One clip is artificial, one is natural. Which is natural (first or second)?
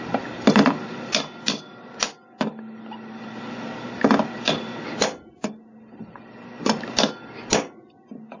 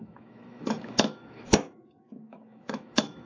first